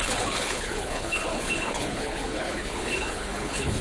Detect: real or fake fake